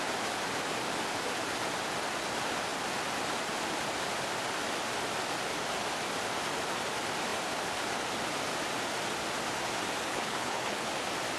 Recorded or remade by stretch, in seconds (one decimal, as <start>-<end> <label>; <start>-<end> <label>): 0.0-10.1 recorded; 10.1-10.9 remade; 10.9-11.4 recorded